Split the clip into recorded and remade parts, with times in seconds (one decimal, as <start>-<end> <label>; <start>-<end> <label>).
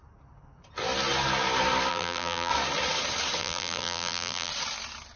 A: 0.0-1.9 recorded; 1.9-2.5 remade; 2.5-3.4 recorded; 3.4-4.5 remade; 4.5-5.2 recorded